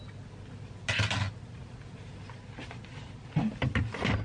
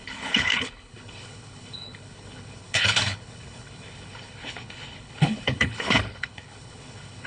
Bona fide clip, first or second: first